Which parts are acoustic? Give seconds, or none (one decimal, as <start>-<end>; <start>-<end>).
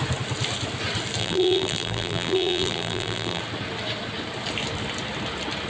0.0-1.2; 3.4-5.7